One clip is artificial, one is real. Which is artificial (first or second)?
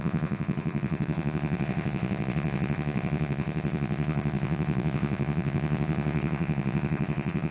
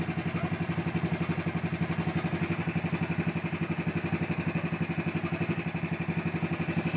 first